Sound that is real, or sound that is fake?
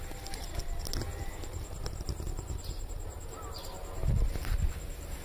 real